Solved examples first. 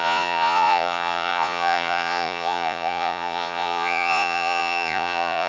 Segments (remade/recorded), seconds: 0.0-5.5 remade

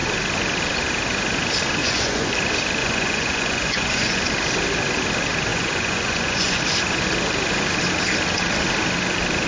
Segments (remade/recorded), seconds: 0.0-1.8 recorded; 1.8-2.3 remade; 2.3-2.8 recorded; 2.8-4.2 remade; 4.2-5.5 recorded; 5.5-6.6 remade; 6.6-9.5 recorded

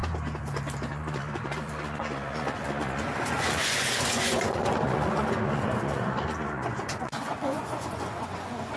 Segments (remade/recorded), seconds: 0.0-0.9 recorded; 0.9-8.8 remade

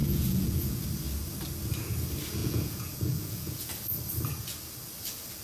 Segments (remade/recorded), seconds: 0.0-0.8 remade; 0.8-2.4 recorded; 2.4-3.7 remade; 3.7-5.4 recorded